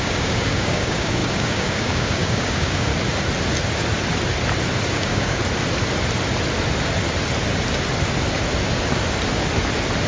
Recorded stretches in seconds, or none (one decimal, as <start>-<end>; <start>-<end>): 2.9-4.9; 5.4-10.1